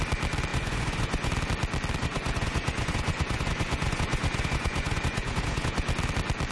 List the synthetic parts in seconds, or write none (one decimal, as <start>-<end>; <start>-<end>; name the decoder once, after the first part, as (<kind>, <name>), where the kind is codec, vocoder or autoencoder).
0.5-1.3 (vocoder, Vocos); 2.0-5.9